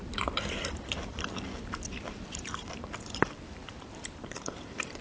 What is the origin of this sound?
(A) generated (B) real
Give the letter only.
A